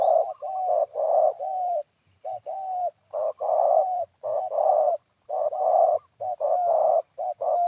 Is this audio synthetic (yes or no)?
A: yes